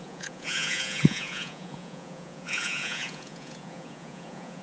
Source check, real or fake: fake